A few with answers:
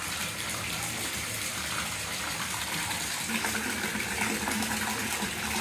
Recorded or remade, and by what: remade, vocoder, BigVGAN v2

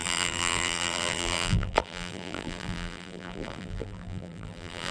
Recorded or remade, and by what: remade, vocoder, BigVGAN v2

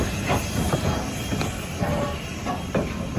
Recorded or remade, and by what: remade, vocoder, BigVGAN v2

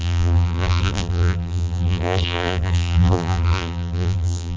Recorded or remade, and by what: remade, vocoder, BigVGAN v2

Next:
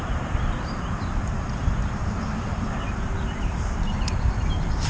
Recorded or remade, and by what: remade, vocoder, BigVGAN v2